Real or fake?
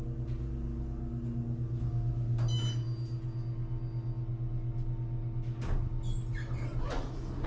real